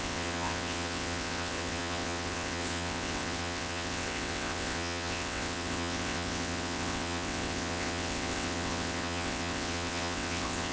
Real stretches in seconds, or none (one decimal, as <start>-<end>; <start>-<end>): none